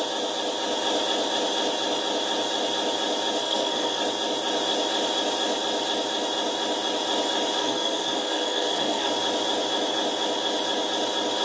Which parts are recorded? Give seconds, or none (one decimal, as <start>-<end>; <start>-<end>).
0.0-3.4; 4.0-7.6; 9.1-11.4